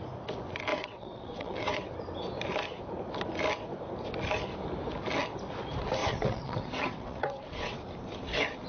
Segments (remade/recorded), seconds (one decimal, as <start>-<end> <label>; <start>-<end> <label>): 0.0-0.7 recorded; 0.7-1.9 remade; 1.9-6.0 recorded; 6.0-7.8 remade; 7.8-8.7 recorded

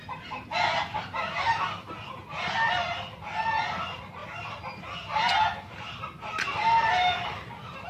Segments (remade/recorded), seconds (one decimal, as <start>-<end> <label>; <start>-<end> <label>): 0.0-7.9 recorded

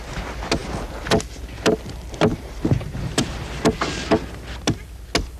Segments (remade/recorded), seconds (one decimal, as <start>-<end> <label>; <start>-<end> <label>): 0.0-2.3 recorded; 2.3-3.5 remade; 3.5-5.4 recorded

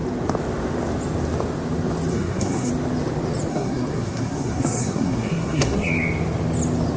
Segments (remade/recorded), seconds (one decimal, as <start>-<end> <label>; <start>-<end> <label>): 0.0-2.1 recorded; 2.1-2.7 remade; 2.7-3.5 recorded; 3.5-5.9 remade; 5.9-7.0 recorded